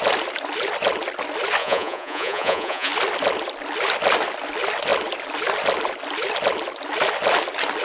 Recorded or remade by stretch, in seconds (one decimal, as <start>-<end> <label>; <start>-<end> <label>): 0.0-1.6 recorded; 1.6-2.9 remade; 2.9-7.8 recorded